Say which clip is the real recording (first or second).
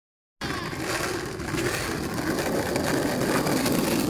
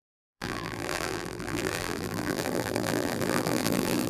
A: first